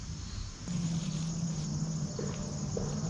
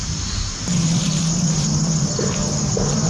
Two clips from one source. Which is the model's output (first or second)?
second